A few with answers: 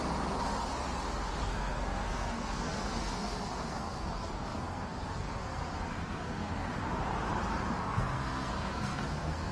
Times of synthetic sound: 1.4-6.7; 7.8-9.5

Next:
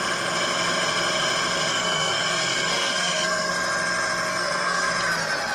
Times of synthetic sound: 1.7-3.5; 4.3-4.9

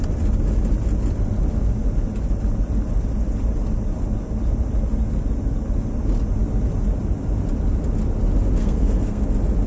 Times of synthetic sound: 8.6-9.2

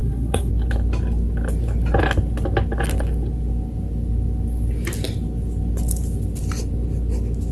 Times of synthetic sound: 0.0-0.5

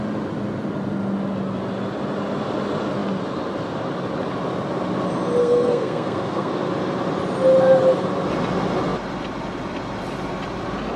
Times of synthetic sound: 5.4-6.5